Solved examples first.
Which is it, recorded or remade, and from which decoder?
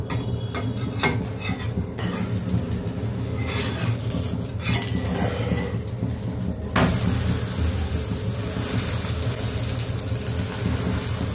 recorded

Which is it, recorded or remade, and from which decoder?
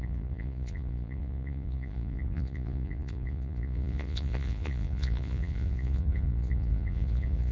remade, vocoder, Vocos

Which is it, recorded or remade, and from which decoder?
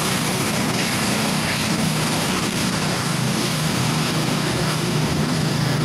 remade, codec, DAC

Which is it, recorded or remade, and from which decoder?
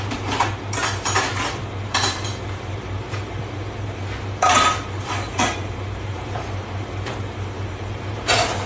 remade, vocoder, BigVGAN v2